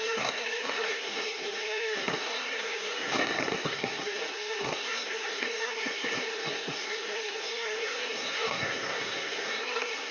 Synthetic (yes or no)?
yes